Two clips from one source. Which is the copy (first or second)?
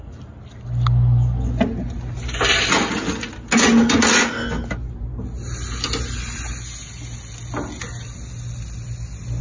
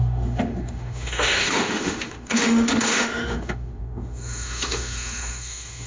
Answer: second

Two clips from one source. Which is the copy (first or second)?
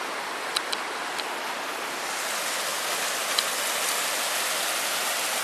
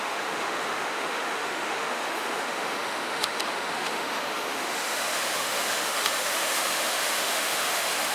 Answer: second